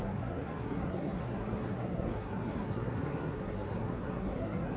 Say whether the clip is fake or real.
fake